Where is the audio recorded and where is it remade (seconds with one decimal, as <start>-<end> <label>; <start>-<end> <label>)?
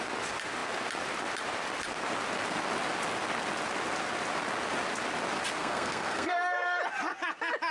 0.0-5.6 recorded; 5.6-6.8 remade; 6.8-7.7 recorded